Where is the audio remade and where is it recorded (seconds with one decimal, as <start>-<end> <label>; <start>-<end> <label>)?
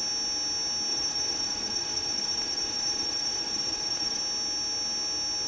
0.0-0.9 recorded; 0.9-4.2 remade; 4.2-5.5 recorded